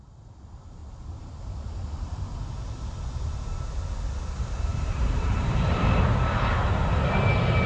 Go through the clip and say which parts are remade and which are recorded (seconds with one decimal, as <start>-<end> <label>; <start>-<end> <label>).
0.0-4.7 recorded; 4.7-6.0 remade; 6.0-7.7 recorded

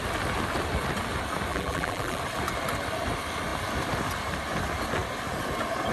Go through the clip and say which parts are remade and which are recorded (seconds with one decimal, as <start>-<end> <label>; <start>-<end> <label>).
0.0-1.5 recorded; 1.5-2.2 remade; 2.2-5.9 recorded

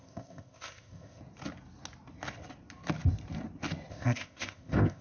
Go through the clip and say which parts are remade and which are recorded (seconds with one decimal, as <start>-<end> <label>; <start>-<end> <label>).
0.0-1.2 remade; 1.2-3.9 recorded; 3.9-5.0 remade

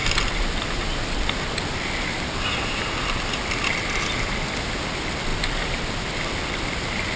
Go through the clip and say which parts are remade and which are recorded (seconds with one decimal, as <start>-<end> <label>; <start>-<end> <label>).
0.0-7.2 recorded

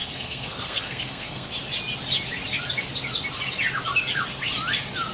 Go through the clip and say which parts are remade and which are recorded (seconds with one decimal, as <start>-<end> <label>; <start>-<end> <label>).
0.0-1.5 remade; 1.5-5.1 recorded

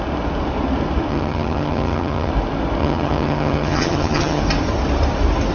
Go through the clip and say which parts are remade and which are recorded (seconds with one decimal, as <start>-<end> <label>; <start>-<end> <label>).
0.0-1.1 recorded; 1.1-2.3 remade; 2.3-2.8 recorded; 2.8-4.4 remade; 4.4-5.5 recorded

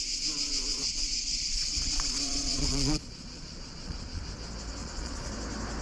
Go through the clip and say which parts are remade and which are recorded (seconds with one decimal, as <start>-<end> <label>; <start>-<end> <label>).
0.0-0.7 recorded; 0.7-4.2 remade; 4.2-4.8 recorded; 4.8-5.3 remade; 5.3-5.8 recorded

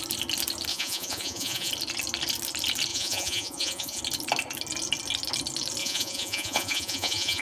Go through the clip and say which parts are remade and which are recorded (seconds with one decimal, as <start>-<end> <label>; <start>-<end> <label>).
0.0-0.7 recorded; 0.7-1.7 remade; 1.7-2.9 recorded; 2.9-4.0 remade; 4.0-5.8 recorded; 5.8-7.4 remade